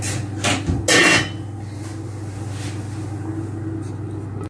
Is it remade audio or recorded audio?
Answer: recorded